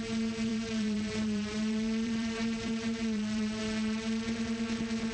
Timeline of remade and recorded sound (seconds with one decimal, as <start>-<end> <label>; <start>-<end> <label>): 0.0-0.5 recorded; 0.5-3.6 remade; 3.6-5.1 recorded